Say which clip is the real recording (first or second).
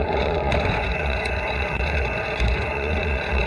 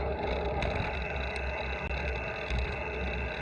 second